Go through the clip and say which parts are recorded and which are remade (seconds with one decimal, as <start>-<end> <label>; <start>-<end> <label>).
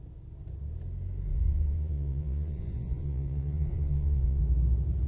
0.0-1.3 recorded; 1.3-4.4 remade; 4.4-5.1 recorded